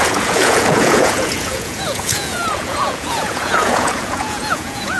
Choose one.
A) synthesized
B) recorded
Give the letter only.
A